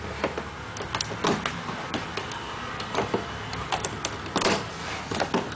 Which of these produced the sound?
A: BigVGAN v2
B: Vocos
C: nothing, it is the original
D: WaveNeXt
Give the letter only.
C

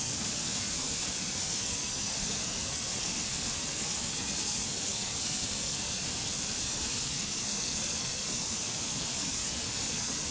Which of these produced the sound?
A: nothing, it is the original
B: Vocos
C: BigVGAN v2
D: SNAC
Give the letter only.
D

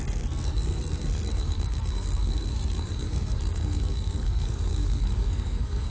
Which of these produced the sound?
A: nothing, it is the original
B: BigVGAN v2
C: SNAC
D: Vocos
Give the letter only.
C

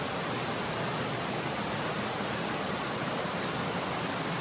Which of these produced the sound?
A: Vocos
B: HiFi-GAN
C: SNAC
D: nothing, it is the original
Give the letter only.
D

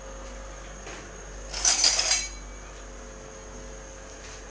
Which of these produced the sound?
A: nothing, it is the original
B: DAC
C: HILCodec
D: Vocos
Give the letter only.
A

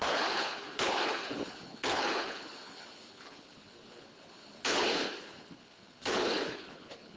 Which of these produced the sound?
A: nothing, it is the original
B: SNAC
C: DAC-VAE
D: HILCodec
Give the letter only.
D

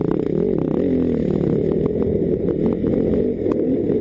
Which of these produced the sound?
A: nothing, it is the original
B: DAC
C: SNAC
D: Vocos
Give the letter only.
A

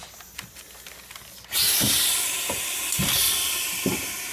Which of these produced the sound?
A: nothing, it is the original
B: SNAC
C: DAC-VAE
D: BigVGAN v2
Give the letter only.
A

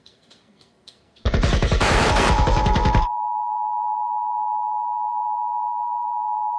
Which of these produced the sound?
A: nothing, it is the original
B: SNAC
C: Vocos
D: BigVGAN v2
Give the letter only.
B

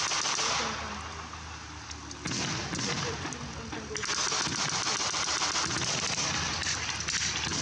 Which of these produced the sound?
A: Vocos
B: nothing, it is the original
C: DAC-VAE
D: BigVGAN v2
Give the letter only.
B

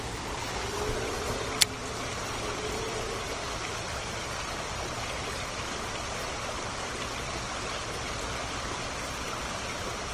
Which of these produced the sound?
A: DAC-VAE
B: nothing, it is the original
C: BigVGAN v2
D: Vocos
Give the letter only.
B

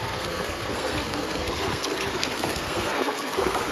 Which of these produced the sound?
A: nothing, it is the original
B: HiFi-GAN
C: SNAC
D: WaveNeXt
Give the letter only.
C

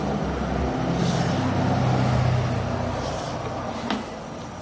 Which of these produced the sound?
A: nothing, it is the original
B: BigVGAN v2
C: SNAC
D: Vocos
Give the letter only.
A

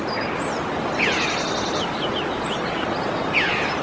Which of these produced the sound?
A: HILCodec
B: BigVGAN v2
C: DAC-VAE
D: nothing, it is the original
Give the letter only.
D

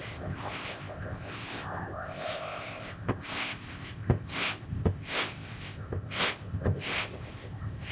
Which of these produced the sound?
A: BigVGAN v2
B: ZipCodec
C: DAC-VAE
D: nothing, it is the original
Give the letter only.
B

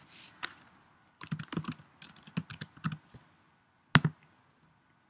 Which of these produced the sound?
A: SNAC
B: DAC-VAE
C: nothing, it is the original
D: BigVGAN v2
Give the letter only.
C